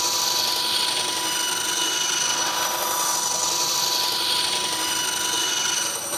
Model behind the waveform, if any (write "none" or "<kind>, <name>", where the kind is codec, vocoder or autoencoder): none